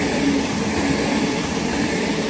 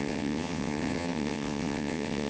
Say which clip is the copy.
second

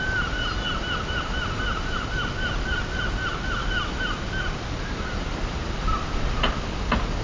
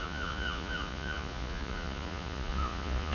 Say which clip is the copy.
second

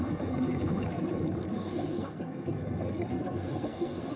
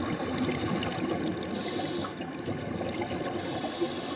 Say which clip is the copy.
first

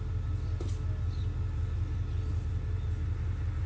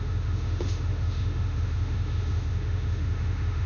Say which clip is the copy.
second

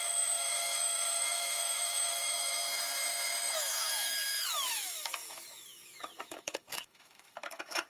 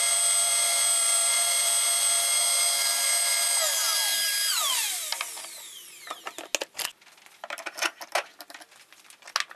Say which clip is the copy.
first